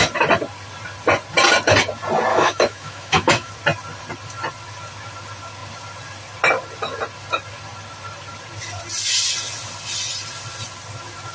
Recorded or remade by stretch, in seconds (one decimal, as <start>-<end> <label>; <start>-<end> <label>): 0.0-2.3 recorded; 2.3-3.5 remade; 3.5-11.3 recorded